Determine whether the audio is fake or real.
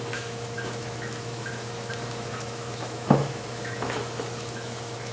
fake